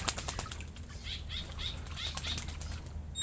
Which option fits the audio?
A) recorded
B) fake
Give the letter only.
A